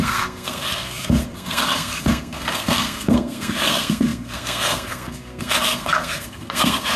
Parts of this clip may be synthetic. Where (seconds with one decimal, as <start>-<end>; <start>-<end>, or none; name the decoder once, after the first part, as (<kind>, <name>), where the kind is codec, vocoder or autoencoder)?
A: 0.0-7.0 (codec, SNAC)